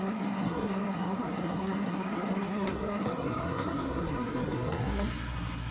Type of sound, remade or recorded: remade